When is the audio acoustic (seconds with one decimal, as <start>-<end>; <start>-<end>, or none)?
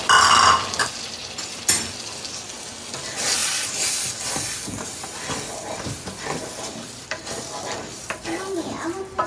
0.0-3.4; 3.9-9.3